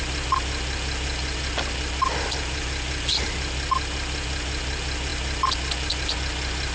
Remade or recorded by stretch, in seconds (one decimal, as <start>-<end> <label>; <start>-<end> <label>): 0.0-6.7 recorded